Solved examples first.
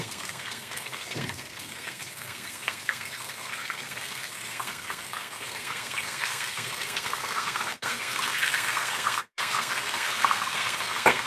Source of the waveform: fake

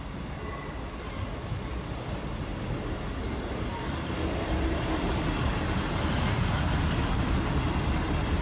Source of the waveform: real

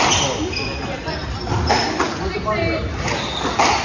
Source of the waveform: real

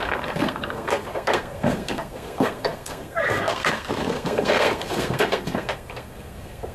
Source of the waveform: fake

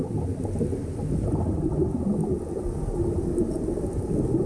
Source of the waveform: real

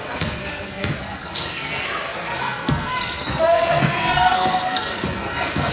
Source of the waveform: fake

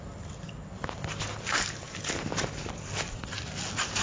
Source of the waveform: real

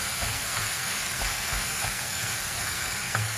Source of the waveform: fake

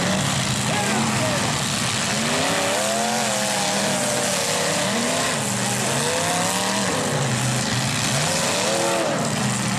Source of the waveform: real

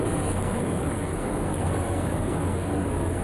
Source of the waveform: fake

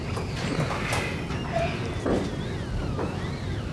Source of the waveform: real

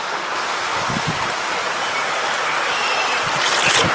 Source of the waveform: real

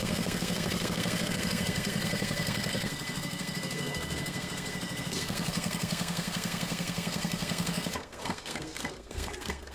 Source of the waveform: fake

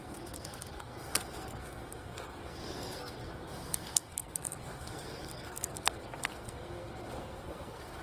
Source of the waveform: fake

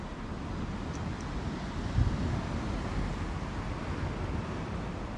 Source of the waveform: real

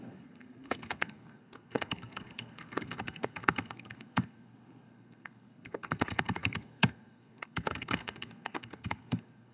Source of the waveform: fake